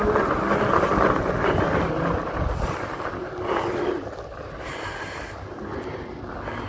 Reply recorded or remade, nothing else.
recorded